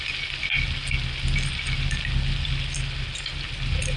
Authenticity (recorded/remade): recorded